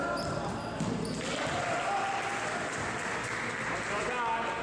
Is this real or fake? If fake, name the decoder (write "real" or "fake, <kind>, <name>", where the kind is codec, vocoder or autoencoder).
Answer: real